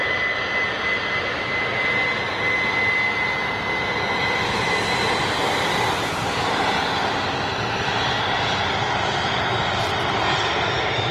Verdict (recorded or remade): recorded